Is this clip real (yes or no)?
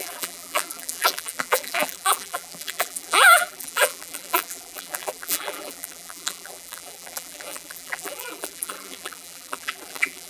no